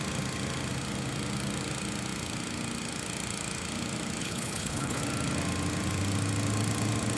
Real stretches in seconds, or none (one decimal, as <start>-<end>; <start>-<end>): 0.0-4.2; 5.0-7.2